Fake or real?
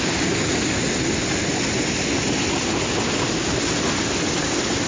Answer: real